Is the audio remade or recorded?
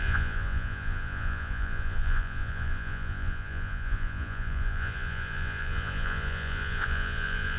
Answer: remade